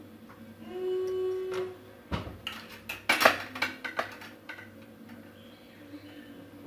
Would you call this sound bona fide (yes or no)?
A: yes